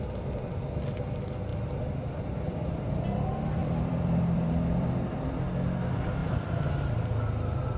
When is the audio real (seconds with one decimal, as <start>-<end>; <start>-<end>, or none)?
0.0-3.6; 5.3-6.2; 6.9-7.8